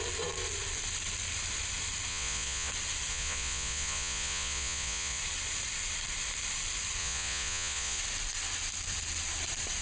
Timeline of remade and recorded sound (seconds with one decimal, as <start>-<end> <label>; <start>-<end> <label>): 0.0-2.1 recorded; 2.1-2.7 remade; 2.7-3.1 recorded; 3.1-5.2 remade; 5.2-7.0 recorded; 7.0-8.0 remade; 8.0-9.8 recorded